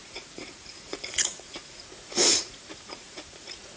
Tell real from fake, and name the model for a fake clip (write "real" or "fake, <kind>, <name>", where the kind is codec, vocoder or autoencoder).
fake, vocoder, Vocos